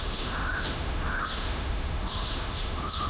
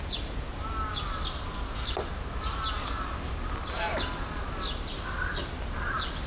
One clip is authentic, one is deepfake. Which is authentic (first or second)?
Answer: second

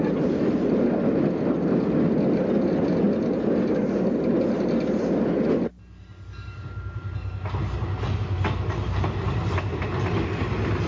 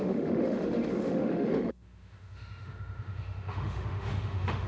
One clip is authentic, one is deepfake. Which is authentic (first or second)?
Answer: first